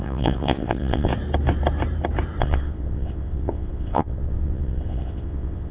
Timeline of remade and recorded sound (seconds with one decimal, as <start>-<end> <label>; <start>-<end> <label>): 0.0-1.1 remade; 1.1-2.4 recorded; 2.4-5.7 remade